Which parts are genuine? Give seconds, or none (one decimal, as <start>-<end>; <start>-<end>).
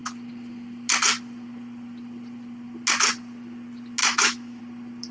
0.0-4.0; 4.6-5.1